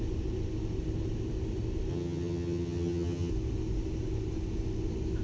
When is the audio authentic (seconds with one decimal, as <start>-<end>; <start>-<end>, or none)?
0.0-1.9; 3.3-5.2